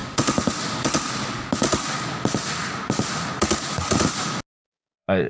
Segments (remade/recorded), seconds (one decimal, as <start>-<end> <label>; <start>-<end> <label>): 0.0-4.6 recorded; 4.6-5.3 remade